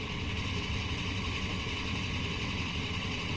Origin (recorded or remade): remade